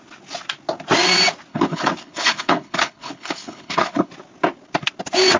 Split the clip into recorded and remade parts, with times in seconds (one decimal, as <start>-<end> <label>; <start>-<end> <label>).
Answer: 0.0-1.5 recorded; 1.5-4.1 remade; 4.1-5.4 recorded